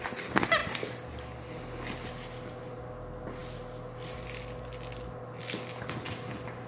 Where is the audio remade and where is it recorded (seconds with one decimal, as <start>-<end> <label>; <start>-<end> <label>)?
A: 0.0-6.7 recorded